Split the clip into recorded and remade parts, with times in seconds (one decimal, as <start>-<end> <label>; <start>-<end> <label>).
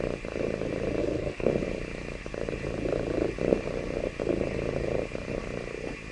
0.0-1.0 recorded; 1.0-1.5 remade; 1.5-6.1 recorded